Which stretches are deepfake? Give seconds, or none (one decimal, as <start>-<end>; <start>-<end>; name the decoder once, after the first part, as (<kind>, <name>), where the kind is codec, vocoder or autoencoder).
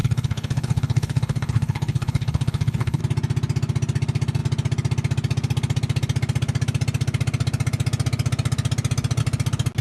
0.0-3.0 (codec, HILCodec)